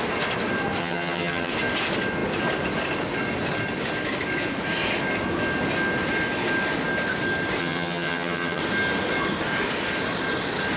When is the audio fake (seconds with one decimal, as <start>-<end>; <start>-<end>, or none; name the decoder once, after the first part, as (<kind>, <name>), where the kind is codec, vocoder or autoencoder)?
0.8-1.5 (vocoder, HiFi-GAN); 7.6-8.6